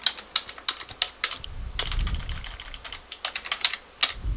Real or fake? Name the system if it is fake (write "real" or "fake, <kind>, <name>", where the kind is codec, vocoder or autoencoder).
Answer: real